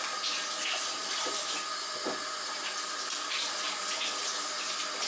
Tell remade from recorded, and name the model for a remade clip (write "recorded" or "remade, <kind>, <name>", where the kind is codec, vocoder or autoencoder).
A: recorded